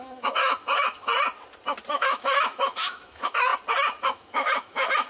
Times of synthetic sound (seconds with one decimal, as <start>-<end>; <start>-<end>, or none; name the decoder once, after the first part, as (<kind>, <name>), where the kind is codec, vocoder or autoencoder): 0.0-1.1 (autoencoder, DAC-VAE); 1.9-3.5; 4.0-5.1